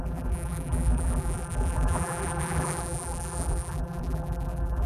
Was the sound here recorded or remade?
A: remade